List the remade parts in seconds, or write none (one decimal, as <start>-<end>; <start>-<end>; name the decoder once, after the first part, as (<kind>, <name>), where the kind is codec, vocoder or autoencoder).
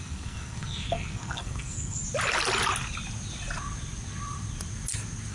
0.0-2.0 (codec, SNAC)